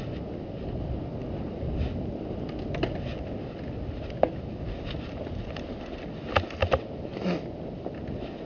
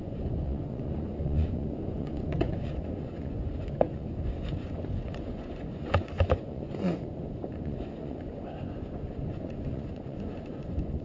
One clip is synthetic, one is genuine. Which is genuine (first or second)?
first